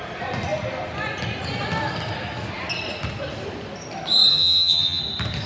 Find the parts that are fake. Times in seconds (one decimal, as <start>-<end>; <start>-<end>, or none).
4.3-5.0